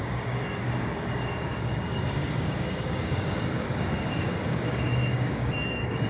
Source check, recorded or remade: remade